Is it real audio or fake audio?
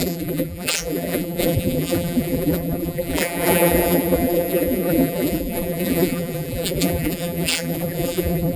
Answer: fake